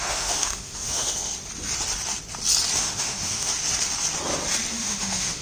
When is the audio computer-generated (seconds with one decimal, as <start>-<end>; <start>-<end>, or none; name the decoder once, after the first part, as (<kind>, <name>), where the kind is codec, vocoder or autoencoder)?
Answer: 0.0-1.3 (autoencoder, DAC-VAE); 2.8-3.5; 4.7-5.4